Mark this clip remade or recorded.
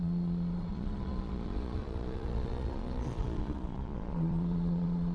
remade